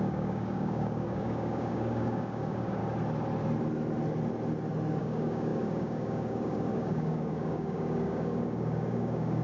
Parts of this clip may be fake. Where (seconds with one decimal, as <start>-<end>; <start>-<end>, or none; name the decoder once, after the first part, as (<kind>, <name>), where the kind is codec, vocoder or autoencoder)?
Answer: 0.0-2.8 (codec, DAC); 5.0-9.4